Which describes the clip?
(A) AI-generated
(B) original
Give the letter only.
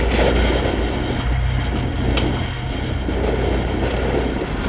B